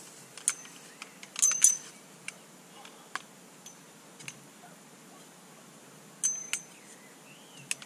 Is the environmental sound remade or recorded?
recorded